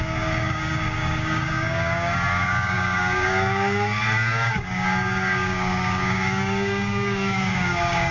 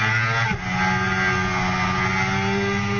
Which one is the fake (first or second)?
first